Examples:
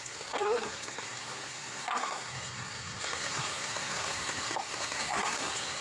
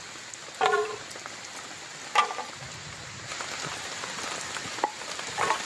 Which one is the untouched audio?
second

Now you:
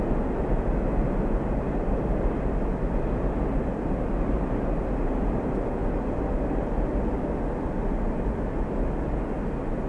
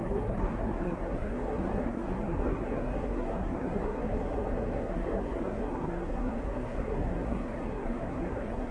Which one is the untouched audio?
first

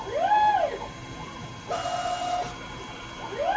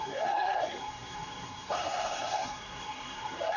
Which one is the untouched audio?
first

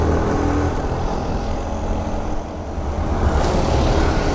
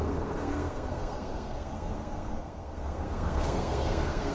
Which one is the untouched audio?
first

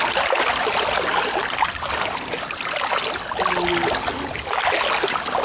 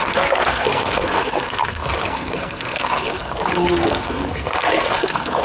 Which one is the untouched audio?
first